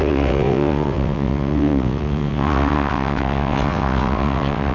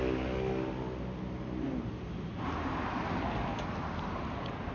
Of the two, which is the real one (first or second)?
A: second